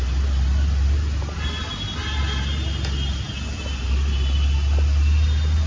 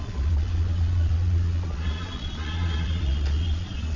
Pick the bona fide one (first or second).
first